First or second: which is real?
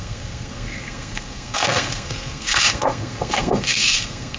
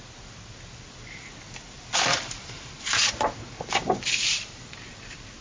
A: second